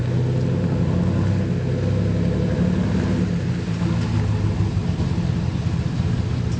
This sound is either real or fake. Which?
real